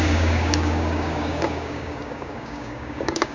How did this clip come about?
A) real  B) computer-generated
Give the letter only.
B